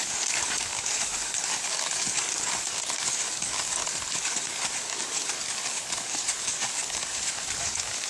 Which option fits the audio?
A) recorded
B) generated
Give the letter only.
B